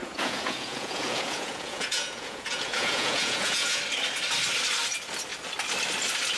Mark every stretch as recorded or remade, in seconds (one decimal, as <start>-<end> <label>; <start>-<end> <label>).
0.0-3.8 remade; 3.8-6.4 recorded